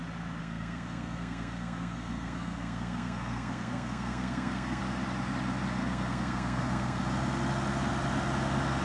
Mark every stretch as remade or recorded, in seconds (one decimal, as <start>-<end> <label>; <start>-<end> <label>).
0.0-0.4 recorded; 0.4-4.8 remade; 4.8-5.8 recorded; 5.8-7.0 remade; 7.0-8.8 recorded